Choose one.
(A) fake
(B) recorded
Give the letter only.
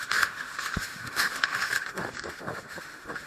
A